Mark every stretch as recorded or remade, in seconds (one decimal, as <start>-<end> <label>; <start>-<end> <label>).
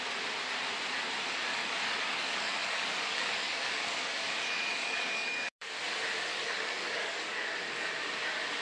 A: 0.0-1.6 recorded; 1.6-5.7 remade; 5.7-6.3 recorded; 6.3-7.5 remade; 7.5-8.6 recorded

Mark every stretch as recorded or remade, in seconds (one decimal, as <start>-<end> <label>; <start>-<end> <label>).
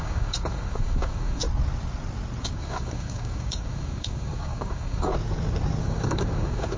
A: 0.0-1.4 remade; 1.4-2.4 recorded; 2.4-5.1 remade; 5.1-5.8 recorded; 5.8-6.8 remade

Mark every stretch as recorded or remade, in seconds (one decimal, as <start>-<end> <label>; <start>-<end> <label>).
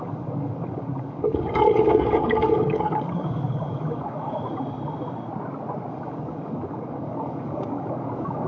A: 0.0-4.5 remade; 4.5-5.9 recorded; 5.9-8.5 remade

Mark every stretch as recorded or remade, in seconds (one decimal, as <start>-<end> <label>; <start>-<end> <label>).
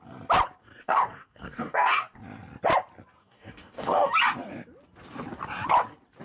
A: 0.0-0.6 recorded; 0.6-2.2 remade; 2.2-3.2 recorded; 3.2-4.1 remade; 4.1-6.2 recorded